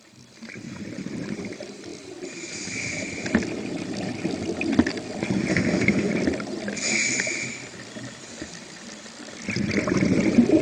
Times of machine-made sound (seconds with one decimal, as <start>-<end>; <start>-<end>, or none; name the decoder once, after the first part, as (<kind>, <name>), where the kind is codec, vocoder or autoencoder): 5.5-6.1 (autoencoder, DAC-VAE)